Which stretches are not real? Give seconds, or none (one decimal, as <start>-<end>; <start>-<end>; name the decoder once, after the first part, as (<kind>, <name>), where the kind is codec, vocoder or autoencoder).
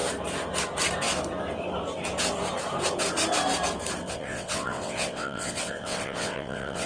4.1-6.9 (vocoder, WaveNeXt)